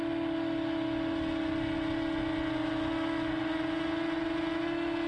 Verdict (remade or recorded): recorded